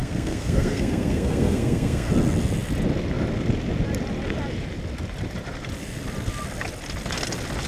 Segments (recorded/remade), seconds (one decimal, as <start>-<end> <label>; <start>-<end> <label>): 0.0-2.1 remade; 2.1-7.7 recorded